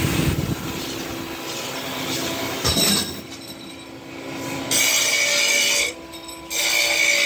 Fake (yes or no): no